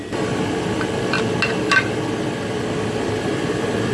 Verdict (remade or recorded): recorded